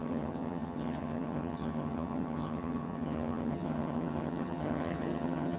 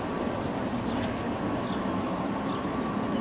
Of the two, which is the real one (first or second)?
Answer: second